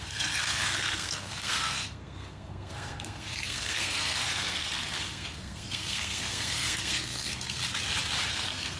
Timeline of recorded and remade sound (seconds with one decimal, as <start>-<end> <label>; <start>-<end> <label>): 0.0-7.6 remade; 7.6-8.3 recorded; 8.3-8.8 remade